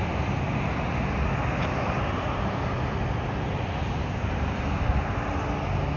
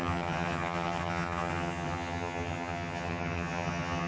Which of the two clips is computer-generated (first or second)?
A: second